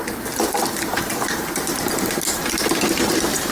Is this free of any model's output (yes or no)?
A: no